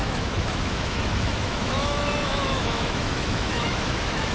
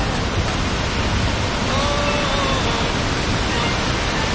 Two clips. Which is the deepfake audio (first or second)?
first